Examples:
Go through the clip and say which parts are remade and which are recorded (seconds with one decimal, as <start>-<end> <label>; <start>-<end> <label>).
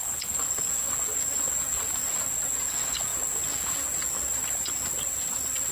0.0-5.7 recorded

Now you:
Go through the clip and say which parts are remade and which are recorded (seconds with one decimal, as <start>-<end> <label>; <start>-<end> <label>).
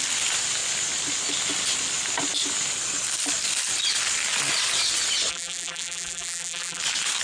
0.0-5.3 recorded; 5.3-6.8 remade; 6.8-7.2 recorded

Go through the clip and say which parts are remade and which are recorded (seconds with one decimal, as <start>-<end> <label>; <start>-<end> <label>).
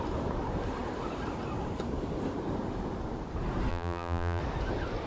0.0-3.7 recorded; 3.7-4.4 remade; 4.4-5.1 recorded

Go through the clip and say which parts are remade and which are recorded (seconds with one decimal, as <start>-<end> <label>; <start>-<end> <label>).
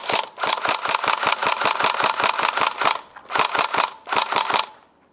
0.0-0.6 remade; 0.6-1.4 recorded; 1.4-4.4 remade; 4.4-5.1 recorded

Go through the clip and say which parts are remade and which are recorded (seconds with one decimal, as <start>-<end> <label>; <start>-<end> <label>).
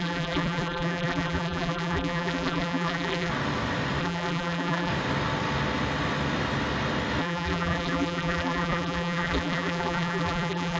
0.0-3.3 remade; 3.3-4.0 recorded; 4.0-4.9 remade; 4.9-7.2 recorded; 7.2-10.8 remade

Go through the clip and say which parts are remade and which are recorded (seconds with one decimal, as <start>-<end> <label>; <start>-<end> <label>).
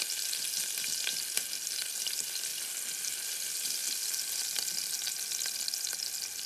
0.0-6.5 recorded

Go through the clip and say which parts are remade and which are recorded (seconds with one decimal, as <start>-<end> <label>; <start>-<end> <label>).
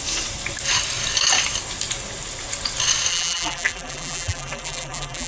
0.0-3.1 recorded; 3.1-5.3 remade